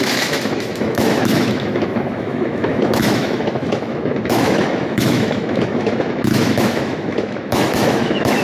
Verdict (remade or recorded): remade